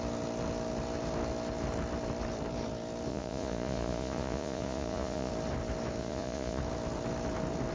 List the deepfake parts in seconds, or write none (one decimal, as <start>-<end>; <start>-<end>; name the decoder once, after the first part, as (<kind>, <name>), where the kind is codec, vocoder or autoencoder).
3.1-5.3 (vocoder, Vocos); 6.0-6.6